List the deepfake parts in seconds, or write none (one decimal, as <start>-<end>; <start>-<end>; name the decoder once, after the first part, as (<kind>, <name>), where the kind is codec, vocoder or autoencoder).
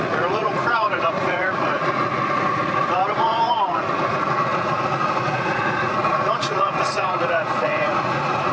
0.0-8.5 (vocoder, Vocos)